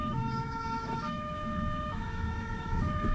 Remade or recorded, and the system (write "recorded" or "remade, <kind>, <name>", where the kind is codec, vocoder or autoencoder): remade, autoencoder, DAC-VAE